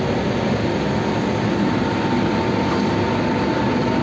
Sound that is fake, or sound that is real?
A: real